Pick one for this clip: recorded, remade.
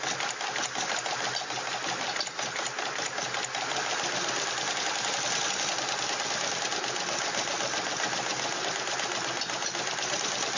recorded